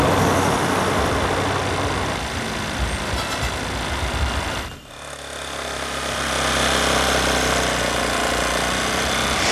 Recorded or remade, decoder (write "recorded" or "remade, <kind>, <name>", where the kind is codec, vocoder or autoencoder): recorded